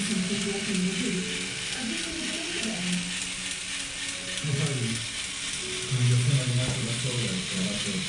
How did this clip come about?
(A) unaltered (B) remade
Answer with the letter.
A